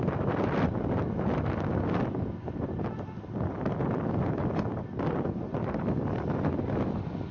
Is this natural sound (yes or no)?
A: yes